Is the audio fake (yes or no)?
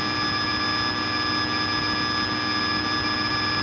no